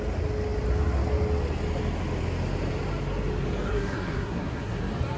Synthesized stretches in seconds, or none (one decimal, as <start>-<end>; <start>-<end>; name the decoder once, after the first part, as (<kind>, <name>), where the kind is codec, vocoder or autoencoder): 3.7-4.8 (codec, SNAC)